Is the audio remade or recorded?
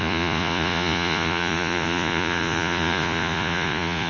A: remade